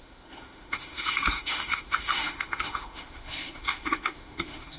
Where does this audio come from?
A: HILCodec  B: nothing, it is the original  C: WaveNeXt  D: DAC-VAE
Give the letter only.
D